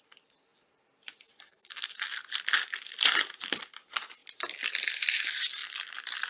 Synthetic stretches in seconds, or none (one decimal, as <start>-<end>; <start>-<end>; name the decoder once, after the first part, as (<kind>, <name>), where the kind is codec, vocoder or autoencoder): 0.0-0.5 (vocoder, BigVGAN v2); 1.9-5.6